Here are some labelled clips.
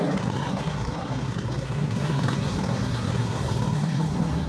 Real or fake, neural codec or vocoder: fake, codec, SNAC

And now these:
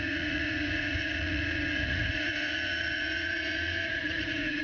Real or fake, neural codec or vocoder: fake, vocoder, Vocos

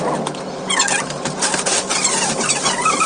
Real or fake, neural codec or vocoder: real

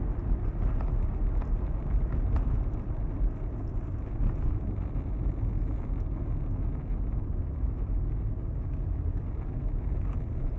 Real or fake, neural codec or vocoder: real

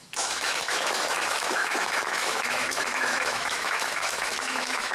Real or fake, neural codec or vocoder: fake, autoencoder, DAC-VAE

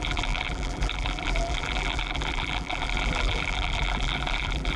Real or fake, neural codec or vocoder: fake, vocoder, BigVGAN v2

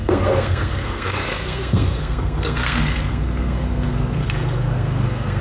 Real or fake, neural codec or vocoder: fake, codec, SNAC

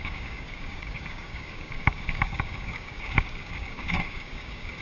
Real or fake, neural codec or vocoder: fake, codec, DAC